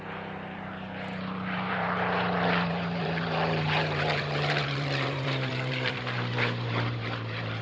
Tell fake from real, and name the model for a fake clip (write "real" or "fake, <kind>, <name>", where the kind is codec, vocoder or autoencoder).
fake, vocoder, BigVGAN v2